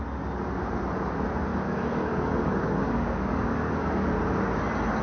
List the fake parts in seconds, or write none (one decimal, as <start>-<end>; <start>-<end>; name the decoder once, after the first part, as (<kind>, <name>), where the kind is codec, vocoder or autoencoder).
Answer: 1.5-4.1 (codec, DAC)